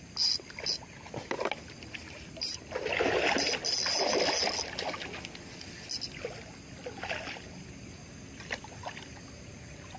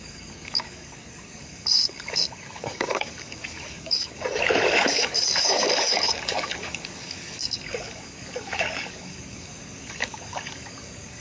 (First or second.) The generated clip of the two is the second